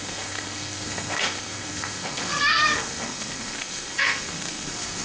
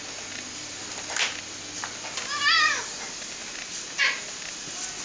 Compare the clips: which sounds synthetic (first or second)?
first